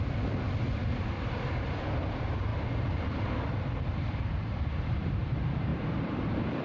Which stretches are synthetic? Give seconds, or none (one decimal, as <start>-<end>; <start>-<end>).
0.8-1.8; 2.5-5.1; 5.7-6.6